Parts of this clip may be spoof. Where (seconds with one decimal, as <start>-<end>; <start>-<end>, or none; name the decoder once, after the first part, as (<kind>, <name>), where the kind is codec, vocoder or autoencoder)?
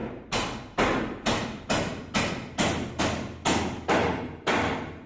none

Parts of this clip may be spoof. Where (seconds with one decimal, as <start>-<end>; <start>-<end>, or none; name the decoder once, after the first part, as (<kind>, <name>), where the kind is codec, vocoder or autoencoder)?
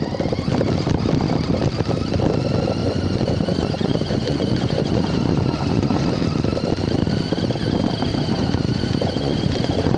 2.8-6.2 (vocoder, Vocos); 8.1-10.0